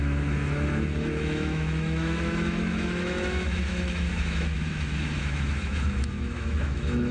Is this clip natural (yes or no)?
no